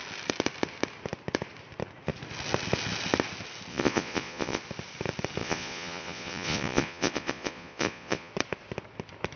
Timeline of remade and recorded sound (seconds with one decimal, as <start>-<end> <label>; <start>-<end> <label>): 0.0-3.7 recorded; 3.7-4.6 remade; 4.6-5.4 recorded; 5.4-8.3 remade; 8.3-9.4 recorded